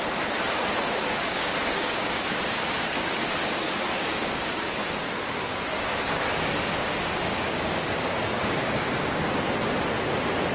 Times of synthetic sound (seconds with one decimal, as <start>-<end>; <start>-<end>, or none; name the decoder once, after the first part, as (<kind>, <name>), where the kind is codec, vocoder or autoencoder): 1.0-6.2 (codec, DAC); 7.3-9.2